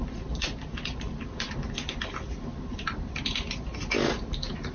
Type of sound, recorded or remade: recorded